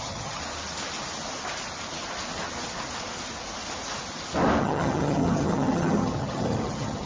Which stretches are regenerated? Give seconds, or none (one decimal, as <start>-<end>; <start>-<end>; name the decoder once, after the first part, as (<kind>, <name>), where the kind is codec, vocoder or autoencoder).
0.0-0.4 (vocoder, HiFi-GAN); 4.6-7.0